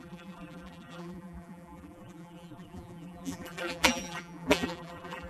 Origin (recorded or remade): remade